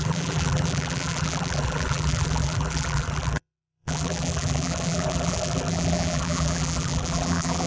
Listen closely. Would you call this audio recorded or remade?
remade